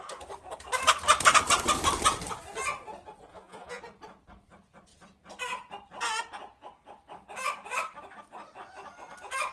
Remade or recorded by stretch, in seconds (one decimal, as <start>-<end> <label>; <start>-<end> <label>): 0.0-3.3 recorded; 3.3-3.8 remade; 3.8-9.5 recorded